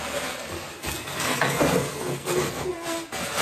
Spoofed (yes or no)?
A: yes